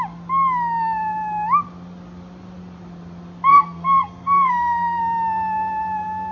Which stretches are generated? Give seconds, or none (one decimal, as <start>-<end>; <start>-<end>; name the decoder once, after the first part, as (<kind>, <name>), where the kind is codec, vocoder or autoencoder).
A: 3.5-5.0 (codec, SNAC)